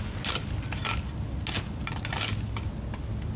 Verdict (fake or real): real